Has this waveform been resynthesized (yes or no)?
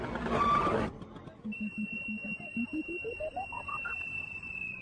no